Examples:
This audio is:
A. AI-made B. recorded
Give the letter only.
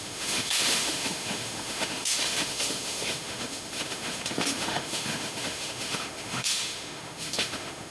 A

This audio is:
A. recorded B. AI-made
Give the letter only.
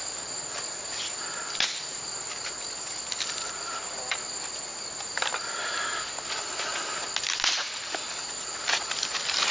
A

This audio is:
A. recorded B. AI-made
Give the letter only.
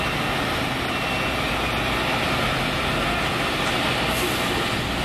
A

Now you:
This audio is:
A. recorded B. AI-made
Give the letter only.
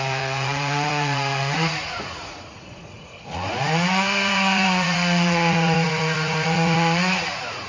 B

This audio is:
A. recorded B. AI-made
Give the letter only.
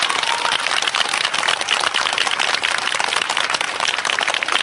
A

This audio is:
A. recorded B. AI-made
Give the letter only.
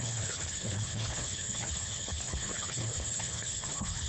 B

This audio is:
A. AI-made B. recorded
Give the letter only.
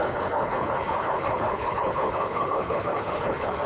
A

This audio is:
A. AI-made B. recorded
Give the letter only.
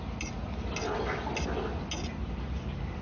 B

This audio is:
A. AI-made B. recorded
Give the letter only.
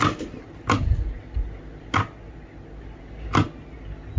B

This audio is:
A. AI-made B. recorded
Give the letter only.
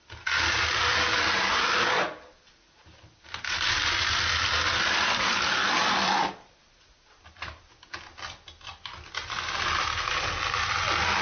B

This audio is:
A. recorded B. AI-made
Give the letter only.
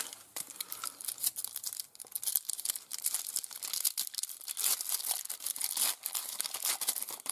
A